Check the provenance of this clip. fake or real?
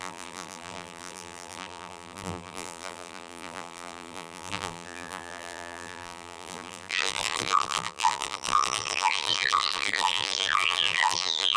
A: fake